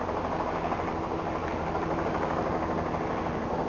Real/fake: fake